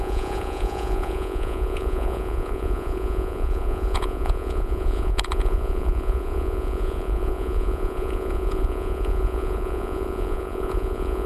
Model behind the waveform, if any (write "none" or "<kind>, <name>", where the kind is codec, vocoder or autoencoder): vocoder, Vocos